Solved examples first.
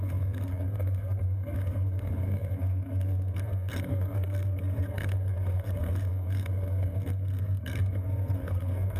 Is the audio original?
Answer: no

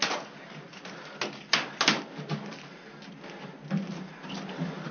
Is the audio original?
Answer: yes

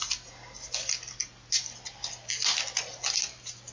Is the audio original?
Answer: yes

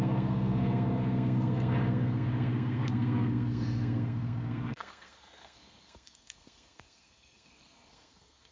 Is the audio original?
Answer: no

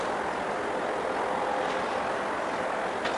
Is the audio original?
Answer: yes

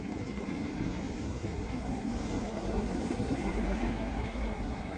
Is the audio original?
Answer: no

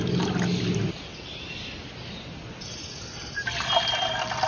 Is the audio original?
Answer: yes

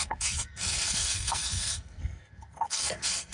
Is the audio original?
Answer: no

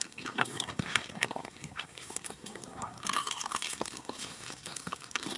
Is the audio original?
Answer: no